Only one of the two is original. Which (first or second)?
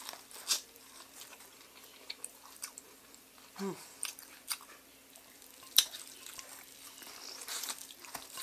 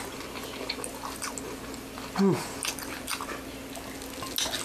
second